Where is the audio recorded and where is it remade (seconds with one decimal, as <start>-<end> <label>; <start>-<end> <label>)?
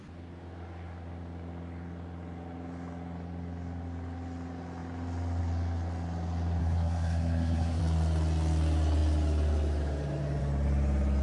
0.0-6.6 recorded; 6.6-7.8 remade; 7.8-11.2 recorded